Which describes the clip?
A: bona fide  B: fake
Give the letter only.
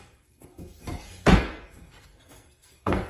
B